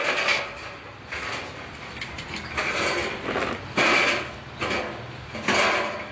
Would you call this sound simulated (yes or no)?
no